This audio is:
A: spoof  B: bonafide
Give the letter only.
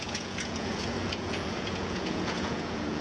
A